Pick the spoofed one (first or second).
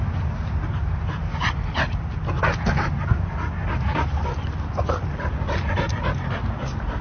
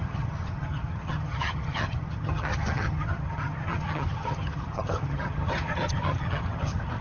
second